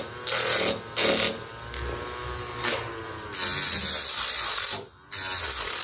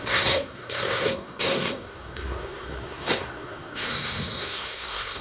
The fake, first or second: second